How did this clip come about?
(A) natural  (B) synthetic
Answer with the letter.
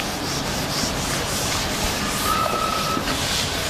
A